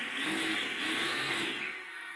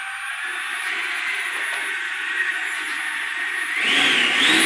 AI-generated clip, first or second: first